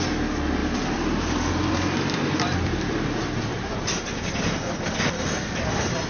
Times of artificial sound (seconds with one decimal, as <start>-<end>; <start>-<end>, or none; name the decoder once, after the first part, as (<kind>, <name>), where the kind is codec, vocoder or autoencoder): 0.6-3.8 (vocoder, BigVGAN v2)